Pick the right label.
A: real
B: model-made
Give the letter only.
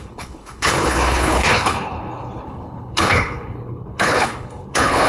B